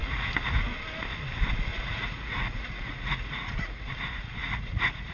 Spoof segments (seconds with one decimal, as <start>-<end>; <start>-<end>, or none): 0.0-0.5; 1.7-5.1